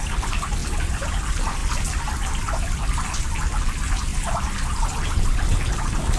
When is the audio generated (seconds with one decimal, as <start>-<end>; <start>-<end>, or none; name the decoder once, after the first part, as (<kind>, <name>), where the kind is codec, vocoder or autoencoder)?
0.6-1.1 (vocoder, BigVGAN v2); 1.6-3.3; 4.1-5.8